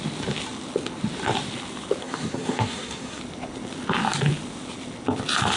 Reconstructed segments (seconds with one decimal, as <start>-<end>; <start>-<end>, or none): 2.0-3.2